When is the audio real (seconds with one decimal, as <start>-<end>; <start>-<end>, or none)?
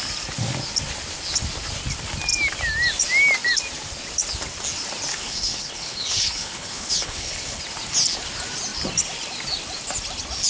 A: 0.0-5.1; 7.6-10.5